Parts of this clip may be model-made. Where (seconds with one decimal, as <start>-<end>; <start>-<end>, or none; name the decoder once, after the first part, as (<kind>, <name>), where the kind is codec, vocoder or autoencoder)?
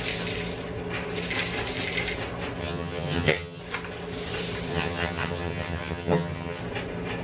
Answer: 2.6-3.6 (vocoder, HiFi-GAN); 4.7-6.6